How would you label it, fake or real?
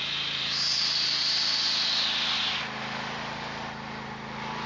real